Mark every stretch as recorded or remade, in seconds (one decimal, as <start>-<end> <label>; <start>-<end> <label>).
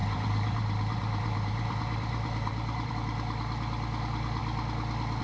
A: 0.0-2.9 remade; 2.9-5.2 recorded